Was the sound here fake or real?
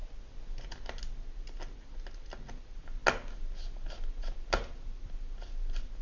real